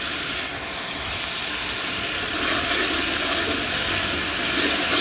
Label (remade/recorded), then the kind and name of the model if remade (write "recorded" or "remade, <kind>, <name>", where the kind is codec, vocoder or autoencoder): recorded